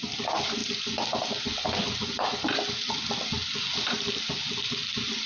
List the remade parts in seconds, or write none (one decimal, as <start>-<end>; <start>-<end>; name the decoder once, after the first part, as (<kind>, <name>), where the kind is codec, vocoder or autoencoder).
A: none